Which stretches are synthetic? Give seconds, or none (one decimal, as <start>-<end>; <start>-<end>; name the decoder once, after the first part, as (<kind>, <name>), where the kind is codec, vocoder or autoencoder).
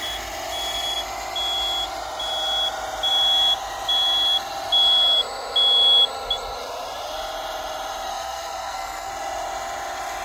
8.1-9.1 (codec, SNAC)